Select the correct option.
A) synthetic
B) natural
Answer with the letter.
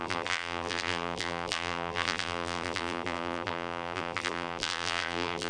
A